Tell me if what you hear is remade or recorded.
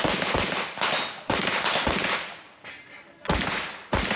recorded